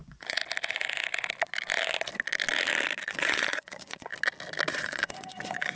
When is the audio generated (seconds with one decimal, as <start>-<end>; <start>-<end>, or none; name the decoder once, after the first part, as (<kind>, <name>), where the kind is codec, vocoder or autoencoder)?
0.0-0.4 (vocoder, Vocos); 3.1-4.1; 4.7-5.8